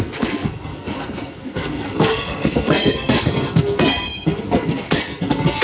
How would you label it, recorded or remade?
remade